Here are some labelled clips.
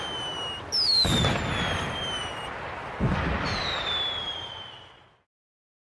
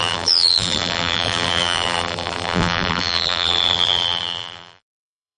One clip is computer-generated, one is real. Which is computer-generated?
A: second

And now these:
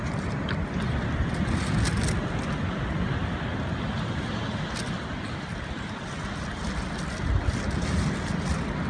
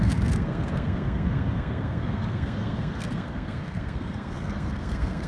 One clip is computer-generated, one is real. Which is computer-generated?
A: second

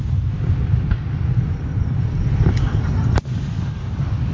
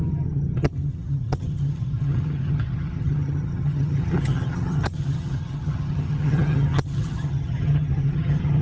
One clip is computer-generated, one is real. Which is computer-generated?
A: second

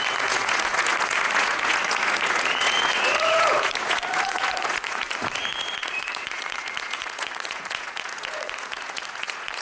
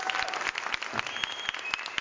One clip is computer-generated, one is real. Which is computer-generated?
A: first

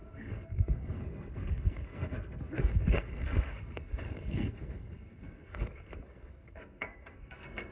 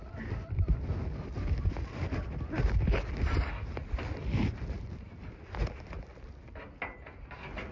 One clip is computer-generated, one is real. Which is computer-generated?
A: first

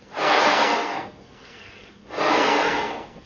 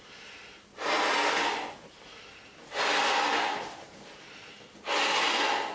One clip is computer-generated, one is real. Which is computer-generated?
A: first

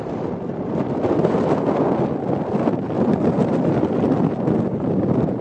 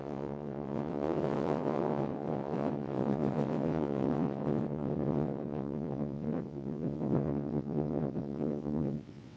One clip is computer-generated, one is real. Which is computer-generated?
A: second